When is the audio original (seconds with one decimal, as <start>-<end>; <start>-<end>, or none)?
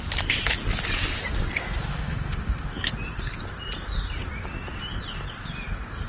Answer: 0.0-1.9; 2.9-6.1